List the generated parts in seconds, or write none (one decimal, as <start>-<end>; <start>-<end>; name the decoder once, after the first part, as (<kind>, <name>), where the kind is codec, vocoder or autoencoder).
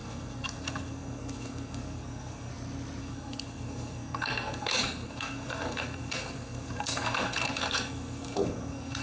0.0-2.5 (codec, SNAC); 3.0-9.0